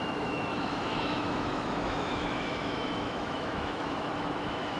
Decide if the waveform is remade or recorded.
remade